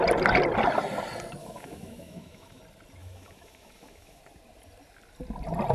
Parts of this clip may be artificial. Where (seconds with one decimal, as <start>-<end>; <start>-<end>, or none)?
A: 1.4-2.6; 3.0-4.2